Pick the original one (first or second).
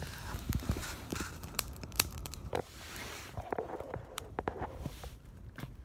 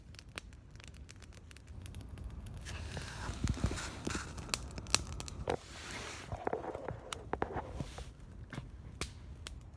second